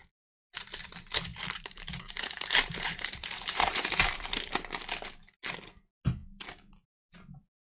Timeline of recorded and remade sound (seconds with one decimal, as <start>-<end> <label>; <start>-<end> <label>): 0.0-1.3 recorded; 1.3-4.4 remade; 4.4-7.6 recorded